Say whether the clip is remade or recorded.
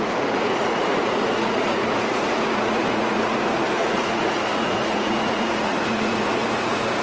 remade